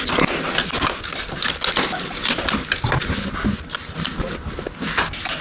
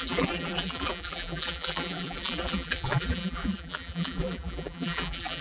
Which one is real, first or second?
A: first